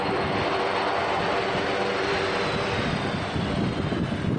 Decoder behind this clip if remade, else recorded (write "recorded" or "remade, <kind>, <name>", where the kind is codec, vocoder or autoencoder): recorded